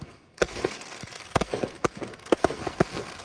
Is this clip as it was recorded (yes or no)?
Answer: no